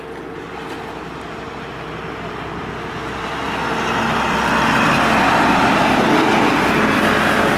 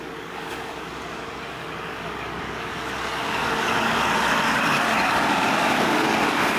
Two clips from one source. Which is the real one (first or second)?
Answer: first